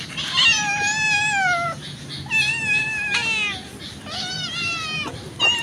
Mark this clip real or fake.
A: real